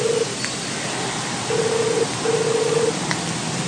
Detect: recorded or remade recorded